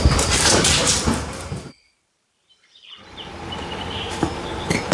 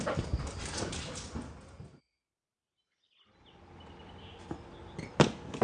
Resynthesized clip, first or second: first